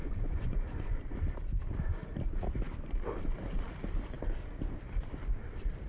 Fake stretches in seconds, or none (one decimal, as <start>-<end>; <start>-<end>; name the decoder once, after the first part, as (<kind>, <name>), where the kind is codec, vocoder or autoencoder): 0.0-1.0 (vocoder, Vocos)